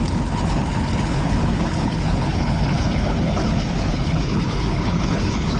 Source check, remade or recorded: remade